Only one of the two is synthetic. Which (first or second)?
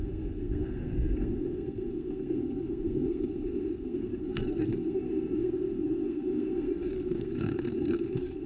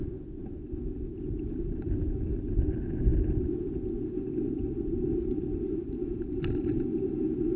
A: first